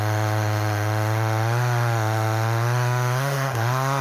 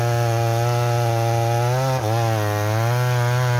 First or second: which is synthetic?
first